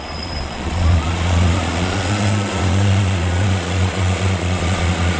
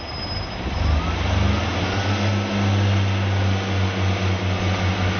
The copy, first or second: first